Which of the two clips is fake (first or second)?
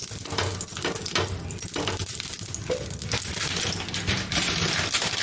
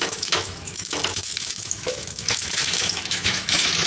second